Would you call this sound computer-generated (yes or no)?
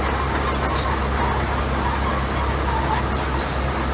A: no